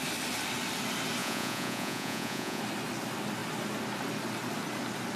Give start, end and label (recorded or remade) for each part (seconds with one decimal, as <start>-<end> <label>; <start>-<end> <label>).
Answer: 0.0-1.2 recorded; 1.2-2.6 remade; 2.6-5.2 recorded